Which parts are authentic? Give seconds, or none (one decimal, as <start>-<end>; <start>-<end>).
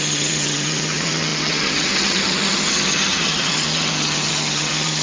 none